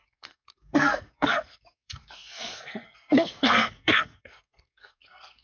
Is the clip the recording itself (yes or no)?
no